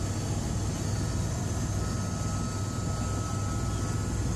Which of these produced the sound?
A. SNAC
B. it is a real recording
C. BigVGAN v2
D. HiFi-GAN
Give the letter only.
B